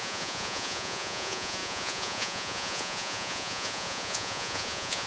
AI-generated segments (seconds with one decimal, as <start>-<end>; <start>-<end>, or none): 0.0-5.1